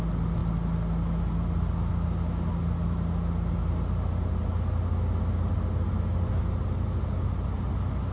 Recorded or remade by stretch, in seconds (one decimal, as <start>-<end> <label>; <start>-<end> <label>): 0.0-8.1 recorded